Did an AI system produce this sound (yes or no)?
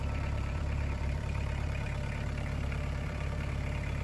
yes